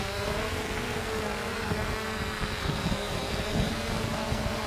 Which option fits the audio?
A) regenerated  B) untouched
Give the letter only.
A